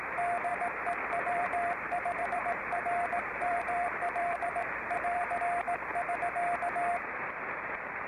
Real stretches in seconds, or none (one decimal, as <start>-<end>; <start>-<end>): 0.0-0.5; 5.4-8.1